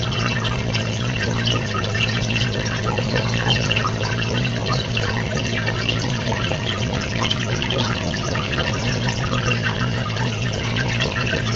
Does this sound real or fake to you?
fake